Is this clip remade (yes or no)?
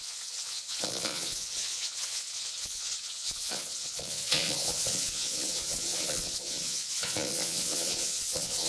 yes